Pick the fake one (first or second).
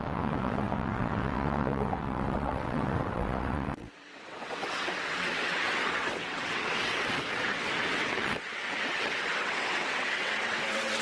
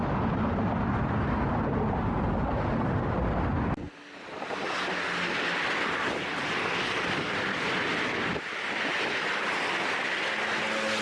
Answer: first